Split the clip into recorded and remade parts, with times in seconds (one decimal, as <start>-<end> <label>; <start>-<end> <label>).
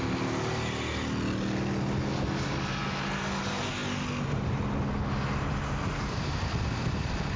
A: 0.0-7.4 recorded